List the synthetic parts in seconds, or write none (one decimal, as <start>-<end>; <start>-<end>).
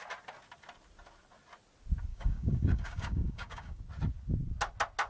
2.1-3.8